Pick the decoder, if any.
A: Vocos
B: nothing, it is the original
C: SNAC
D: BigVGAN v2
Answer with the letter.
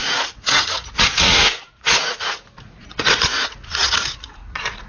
A